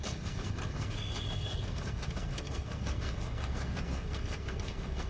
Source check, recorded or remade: remade